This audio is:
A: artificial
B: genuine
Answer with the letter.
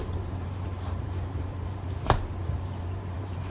A